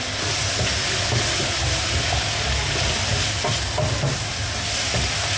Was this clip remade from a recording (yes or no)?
no